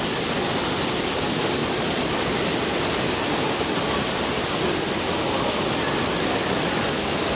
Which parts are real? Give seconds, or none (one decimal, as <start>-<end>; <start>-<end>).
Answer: 0.0-7.4